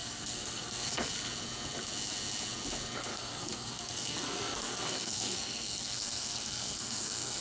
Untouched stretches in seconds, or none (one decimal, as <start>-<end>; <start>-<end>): 1.1-3.1